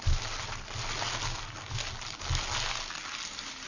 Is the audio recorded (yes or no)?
yes